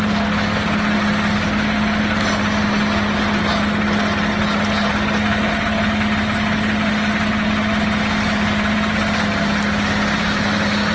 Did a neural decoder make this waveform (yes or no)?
no